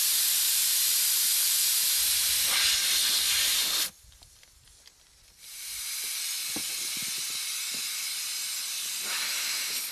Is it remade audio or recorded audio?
recorded